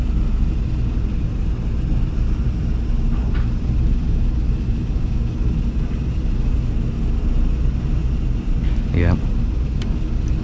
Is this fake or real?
real